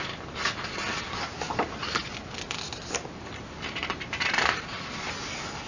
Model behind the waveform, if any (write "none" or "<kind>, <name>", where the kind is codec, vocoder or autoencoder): none